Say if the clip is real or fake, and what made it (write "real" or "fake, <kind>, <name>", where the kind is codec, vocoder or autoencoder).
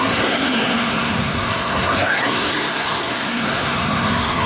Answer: fake, codec, SNAC